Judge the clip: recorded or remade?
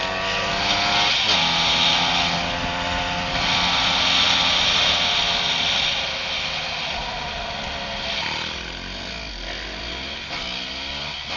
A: recorded